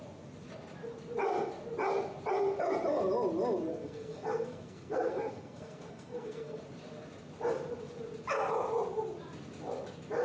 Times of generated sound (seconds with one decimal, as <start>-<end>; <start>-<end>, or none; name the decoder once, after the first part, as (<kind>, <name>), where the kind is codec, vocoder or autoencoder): 3.7-6.6 (codec, SNAC)